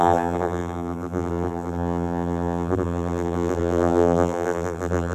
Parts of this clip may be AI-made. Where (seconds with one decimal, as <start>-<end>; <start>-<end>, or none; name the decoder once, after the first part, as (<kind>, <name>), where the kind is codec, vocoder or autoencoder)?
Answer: 0.0-5.1 (vocoder, BigVGAN v2)

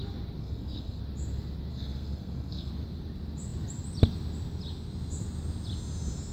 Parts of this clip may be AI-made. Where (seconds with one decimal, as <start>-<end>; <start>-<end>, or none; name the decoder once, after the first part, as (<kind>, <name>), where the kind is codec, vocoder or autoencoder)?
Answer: 0.4-1.0 (codec, SNAC); 1.7-2.7

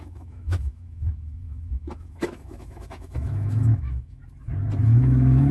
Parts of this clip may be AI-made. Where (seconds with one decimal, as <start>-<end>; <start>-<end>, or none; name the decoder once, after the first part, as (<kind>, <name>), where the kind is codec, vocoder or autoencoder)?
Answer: 0.0-4.2 (autoencoder, DAC-VAE); 4.8-5.5

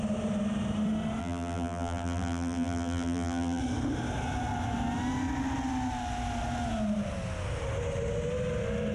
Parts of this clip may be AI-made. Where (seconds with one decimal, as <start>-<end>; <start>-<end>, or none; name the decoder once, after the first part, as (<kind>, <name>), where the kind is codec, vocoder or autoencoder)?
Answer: 1.2-3.6 (vocoder, BigVGAN v2)

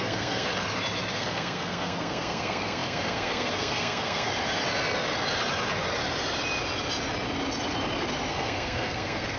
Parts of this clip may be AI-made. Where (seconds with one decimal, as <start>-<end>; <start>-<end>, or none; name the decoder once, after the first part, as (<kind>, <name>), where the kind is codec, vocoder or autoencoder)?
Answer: 0.0-0.5 (codec, SNAC); 1.1-4.3; 8.3-9.4

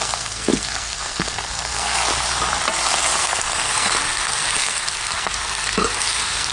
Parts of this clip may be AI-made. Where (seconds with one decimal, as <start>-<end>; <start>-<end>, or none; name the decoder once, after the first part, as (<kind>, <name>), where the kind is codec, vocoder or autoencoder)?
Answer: 0.0-2.1 (codec, SNAC); 3.2-6.5

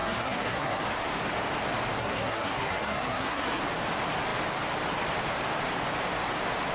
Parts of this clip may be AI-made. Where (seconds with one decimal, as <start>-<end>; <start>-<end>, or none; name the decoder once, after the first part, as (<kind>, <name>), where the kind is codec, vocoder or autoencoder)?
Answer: 0.0-0.8 (codec, SNAC); 2.0-3.6